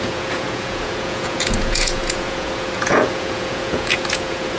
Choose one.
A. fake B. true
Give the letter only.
A